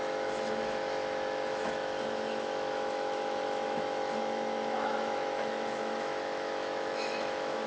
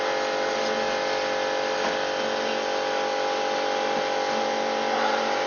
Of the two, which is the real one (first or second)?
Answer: second